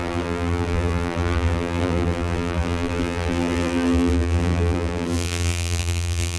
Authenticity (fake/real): fake